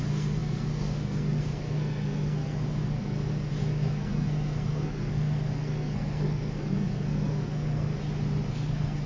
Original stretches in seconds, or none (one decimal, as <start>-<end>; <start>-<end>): 7.9-8.5